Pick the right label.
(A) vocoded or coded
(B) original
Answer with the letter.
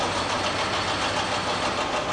B